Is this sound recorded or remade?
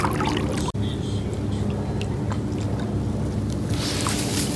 recorded